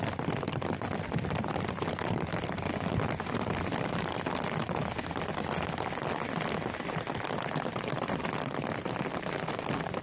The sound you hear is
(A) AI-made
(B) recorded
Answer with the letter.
B